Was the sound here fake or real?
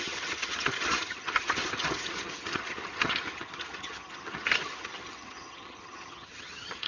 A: fake